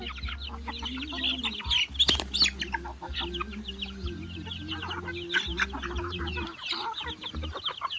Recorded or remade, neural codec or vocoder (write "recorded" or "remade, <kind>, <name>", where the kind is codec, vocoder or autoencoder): recorded